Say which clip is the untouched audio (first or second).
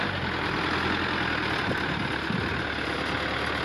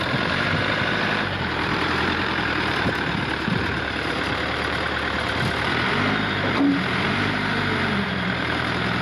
first